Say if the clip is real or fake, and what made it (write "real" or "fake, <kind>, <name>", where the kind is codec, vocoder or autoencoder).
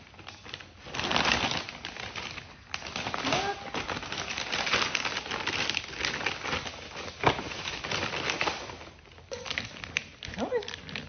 real